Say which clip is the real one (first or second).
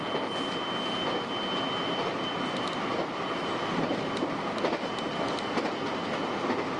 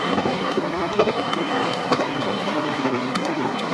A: first